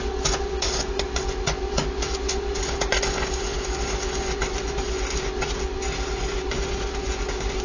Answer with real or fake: fake